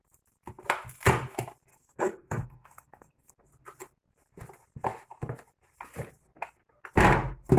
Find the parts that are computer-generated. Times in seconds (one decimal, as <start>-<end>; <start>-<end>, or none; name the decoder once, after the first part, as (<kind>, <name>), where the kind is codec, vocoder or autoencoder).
1.7-3.3 (codec, SNAC)